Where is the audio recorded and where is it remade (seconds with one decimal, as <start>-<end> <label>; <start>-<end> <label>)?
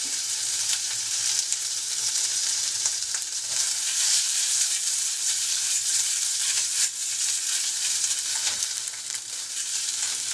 0.0-6.7 remade; 6.7-7.7 recorded; 7.7-10.3 remade